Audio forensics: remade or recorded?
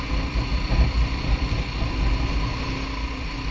recorded